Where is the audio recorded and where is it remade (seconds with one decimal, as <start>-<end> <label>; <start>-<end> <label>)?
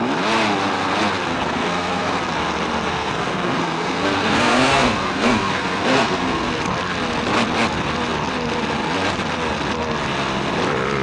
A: 0.0-1.3 recorded; 1.3-2.2 remade; 2.2-2.9 recorded; 2.9-6.5 remade; 6.5-11.0 recorded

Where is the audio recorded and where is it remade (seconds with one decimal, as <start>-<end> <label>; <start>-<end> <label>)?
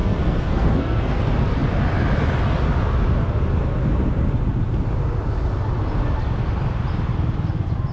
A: 0.0-1.2 remade; 1.2-7.9 recorded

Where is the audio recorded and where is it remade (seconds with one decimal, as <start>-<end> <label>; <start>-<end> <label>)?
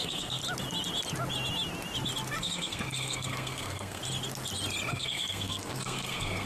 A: 0.0-0.4 remade; 0.4-2.4 recorded; 2.4-4.0 remade; 4.0-4.9 recorded; 4.9-6.5 remade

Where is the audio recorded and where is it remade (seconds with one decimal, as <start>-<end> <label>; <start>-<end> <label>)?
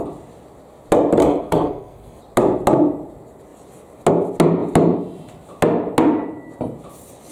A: 0.0-1.2 recorded; 1.2-2.2 remade; 2.2-7.3 recorded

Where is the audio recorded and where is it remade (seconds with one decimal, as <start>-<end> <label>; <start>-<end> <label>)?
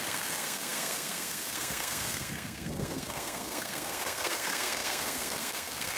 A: 0.0-6.0 remade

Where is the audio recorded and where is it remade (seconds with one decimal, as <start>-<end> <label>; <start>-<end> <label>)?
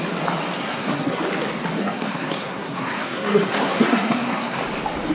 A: 0.0-0.6 recorded; 0.6-1.2 remade; 1.2-1.8 recorded; 1.8-4.6 remade; 4.6-5.1 recorded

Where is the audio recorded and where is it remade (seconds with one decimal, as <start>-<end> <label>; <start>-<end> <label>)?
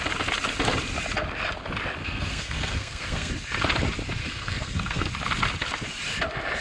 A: 0.0-2.0 recorded; 2.0-3.3 remade; 3.3-4.2 recorded; 4.2-5.1 remade; 5.1-6.6 recorded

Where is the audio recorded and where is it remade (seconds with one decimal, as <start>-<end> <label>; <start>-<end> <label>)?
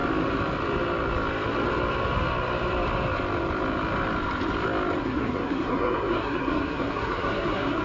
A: 0.0-5.0 recorded; 5.0-7.8 remade